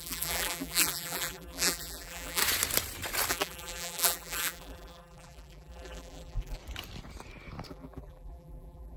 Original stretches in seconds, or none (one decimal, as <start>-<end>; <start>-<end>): 2.4-3.3; 6.6-7.7